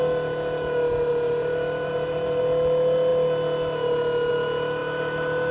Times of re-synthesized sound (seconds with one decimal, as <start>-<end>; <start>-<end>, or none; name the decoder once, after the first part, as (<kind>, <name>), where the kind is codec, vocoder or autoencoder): 1.1-2.4 (vocoder, BigVGAN v2)